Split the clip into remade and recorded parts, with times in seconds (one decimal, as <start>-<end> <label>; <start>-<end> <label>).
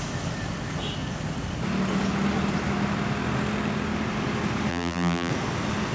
0.0-4.7 recorded; 4.7-5.3 remade; 5.3-5.9 recorded